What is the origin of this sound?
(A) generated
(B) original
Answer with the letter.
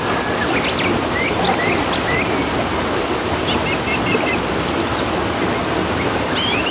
B